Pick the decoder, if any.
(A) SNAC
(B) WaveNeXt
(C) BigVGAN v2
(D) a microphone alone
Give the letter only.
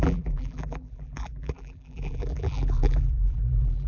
C